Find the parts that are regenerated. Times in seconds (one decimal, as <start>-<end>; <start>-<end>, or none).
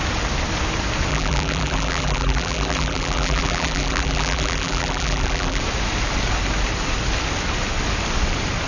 1.1-5.6